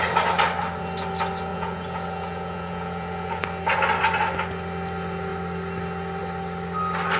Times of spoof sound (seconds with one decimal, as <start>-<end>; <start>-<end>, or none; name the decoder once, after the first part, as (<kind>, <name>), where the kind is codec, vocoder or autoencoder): 1.5-3.4 (vocoder, Vocos)